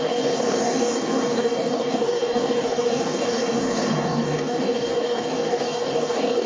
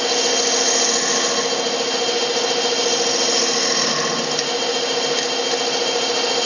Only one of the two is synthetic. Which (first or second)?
first